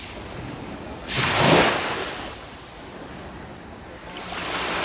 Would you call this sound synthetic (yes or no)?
yes